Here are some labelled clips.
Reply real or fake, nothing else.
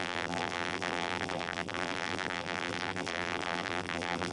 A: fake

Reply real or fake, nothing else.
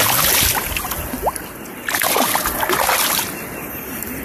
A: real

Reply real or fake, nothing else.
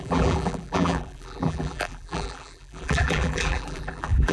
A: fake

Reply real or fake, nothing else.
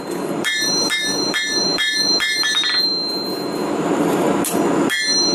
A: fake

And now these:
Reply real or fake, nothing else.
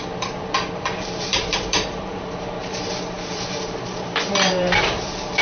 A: fake